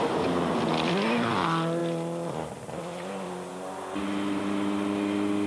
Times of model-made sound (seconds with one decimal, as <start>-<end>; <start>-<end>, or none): none

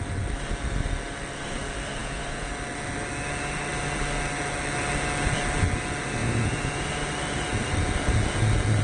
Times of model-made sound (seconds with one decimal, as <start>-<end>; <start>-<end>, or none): 2.0-2.5; 6.2-6.9